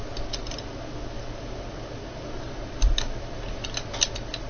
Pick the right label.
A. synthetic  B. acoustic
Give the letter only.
B